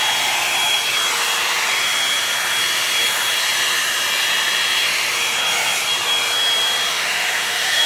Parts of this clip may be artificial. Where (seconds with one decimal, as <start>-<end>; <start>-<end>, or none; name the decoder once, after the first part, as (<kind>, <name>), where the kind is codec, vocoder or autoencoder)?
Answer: 6.9-7.9 (autoencoder, DAC-VAE)